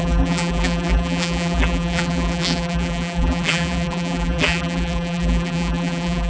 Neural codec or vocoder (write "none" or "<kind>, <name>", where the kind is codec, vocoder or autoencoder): vocoder, BigVGAN v2